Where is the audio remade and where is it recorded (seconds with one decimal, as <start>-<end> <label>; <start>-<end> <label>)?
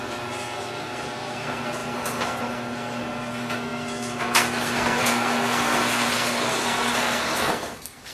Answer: 0.0-8.1 remade